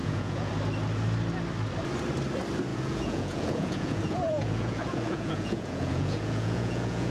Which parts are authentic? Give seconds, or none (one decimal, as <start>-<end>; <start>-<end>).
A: 0.5-2.7